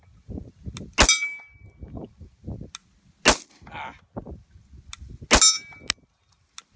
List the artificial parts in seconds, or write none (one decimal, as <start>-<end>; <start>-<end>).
none